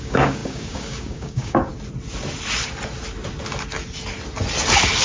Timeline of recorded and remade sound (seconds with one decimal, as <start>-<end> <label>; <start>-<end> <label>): 0.0-1.7 remade; 1.7-5.0 recorded